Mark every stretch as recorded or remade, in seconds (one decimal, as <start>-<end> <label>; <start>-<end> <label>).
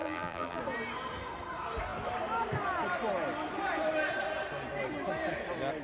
0.0-0.6 remade; 0.6-5.8 recorded